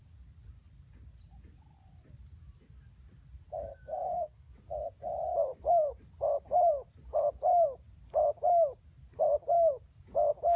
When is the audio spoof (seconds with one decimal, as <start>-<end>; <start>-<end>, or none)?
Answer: 3.7-4.5